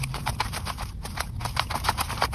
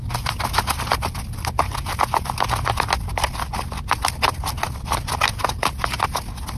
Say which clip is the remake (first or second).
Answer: first